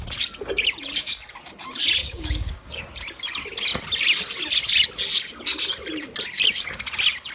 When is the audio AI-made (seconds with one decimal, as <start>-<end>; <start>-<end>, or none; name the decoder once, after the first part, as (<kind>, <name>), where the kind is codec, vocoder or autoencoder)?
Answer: 2.0-2.8 (codec, DAC)